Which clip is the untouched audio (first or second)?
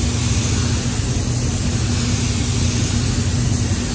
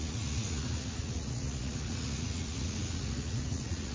first